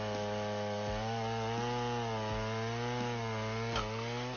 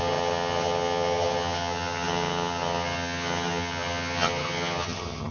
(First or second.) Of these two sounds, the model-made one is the second